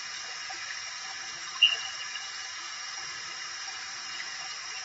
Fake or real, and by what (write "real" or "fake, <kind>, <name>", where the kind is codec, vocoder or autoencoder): fake, vocoder, Vocos